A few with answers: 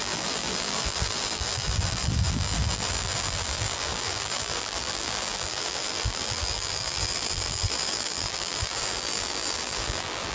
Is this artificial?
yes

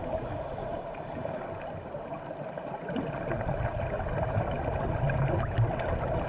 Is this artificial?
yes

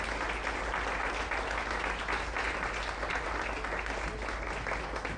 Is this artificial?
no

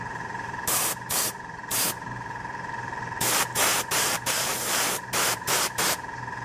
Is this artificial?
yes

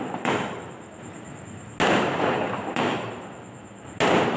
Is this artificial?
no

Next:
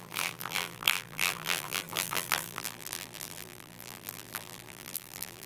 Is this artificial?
yes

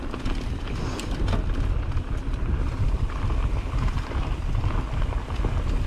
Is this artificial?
no